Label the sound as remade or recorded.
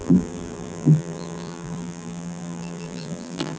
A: remade